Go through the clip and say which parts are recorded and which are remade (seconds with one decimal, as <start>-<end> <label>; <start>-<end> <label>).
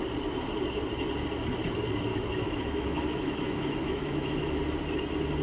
0.0-2.1 recorded; 2.1-4.6 remade; 4.6-5.4 recorded